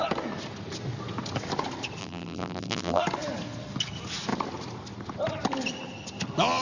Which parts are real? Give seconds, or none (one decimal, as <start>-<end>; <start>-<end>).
0.0-2.0; 3.0-6.6